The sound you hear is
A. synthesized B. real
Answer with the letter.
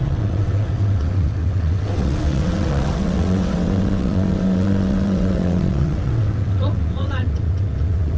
A